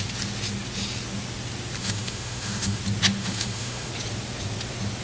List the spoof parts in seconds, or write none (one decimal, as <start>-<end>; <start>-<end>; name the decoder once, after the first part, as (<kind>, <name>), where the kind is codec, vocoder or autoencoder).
1.8-2.8 (autoencoder, DAC-VAE); 3.2-3.9